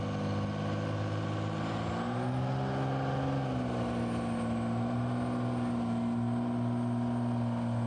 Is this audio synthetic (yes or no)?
no